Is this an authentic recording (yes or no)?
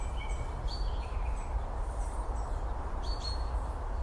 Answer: no